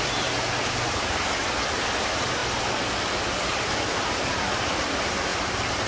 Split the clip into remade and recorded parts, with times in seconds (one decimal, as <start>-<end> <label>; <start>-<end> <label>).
0.0-5.9 recorded